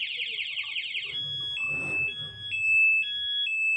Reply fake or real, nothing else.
real